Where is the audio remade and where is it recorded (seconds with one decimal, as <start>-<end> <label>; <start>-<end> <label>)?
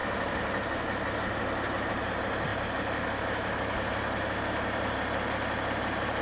0.0-6.2 recorded